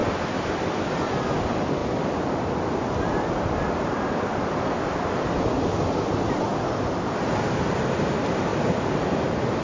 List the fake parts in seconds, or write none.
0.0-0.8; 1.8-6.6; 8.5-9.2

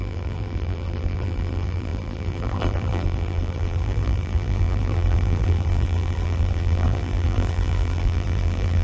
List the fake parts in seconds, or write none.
0.0-8.8